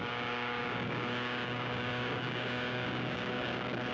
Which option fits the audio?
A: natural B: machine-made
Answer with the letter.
B